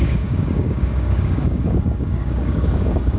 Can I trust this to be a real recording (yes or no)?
no